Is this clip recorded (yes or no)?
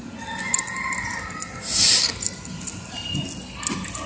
yes